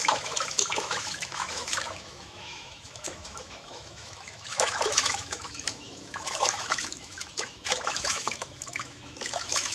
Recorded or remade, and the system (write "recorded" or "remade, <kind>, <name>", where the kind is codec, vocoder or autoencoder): remade, autoencoder, DAC-VAE